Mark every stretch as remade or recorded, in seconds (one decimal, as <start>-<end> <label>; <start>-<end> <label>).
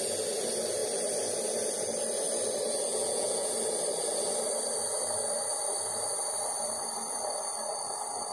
0.0-2.9 recorded; 2.9-3.5 remade; 3.5-8.3 recorded